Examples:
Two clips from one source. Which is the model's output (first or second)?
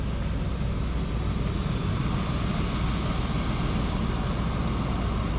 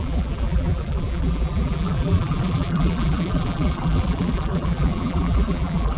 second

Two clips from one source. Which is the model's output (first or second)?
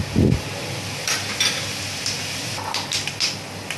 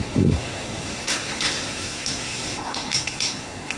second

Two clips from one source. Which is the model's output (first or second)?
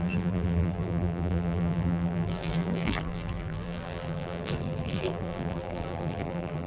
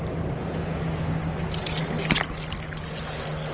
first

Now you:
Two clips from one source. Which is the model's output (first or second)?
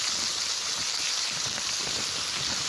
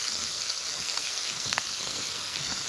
second